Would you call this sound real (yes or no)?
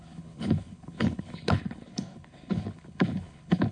no